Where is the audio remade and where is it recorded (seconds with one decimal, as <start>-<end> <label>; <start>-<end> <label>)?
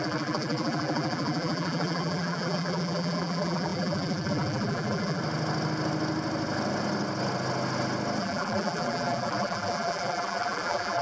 0.0-5.2 remade; 5.2-8.2 recorded; 8.2-11.0 remade